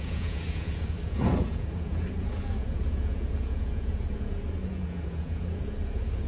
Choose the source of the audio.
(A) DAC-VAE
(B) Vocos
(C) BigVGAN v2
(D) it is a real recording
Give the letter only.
B